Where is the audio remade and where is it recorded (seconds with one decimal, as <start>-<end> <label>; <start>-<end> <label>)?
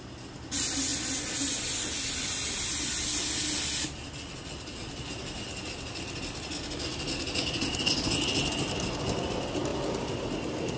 0.0-10.8 recorded